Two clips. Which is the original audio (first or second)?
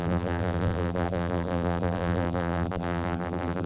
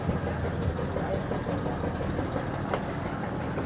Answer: second